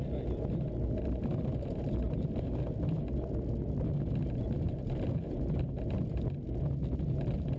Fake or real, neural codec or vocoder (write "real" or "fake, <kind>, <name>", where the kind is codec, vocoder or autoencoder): real